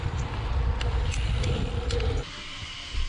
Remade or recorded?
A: recorded